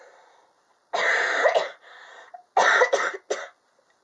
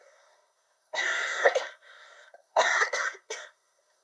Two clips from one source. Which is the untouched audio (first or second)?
first